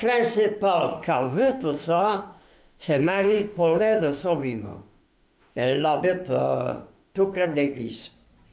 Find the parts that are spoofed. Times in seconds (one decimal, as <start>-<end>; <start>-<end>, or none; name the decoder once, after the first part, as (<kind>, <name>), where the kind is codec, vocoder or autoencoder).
0.9-6.0 (autoencoder, DAC-VAE); 6.4-7.8